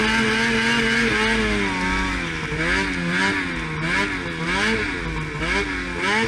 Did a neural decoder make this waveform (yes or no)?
no